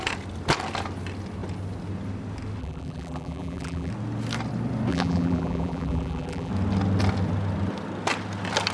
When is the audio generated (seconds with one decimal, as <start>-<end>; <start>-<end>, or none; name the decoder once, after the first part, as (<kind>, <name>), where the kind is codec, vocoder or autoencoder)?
2.6-3.9 (vocoder, BigVGAN v2); 4.9-6.5